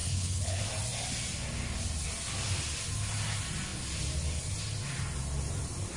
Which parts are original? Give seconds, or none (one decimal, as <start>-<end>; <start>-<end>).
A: 0.6-6.0